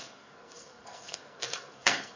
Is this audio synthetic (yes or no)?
yes